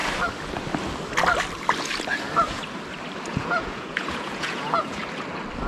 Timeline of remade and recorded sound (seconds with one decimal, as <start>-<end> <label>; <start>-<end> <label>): 0.0-3.3 recorded; 3.3-5.0 remade; 5.0-5.7 recorded